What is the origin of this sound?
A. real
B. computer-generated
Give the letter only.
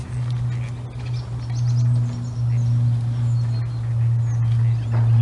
A